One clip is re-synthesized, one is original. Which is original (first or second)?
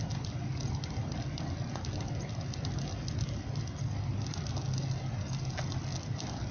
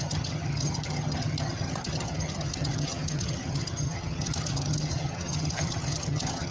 first